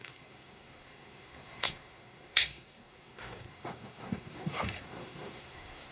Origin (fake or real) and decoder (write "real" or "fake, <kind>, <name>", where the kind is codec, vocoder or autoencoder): fake, codec, SNAC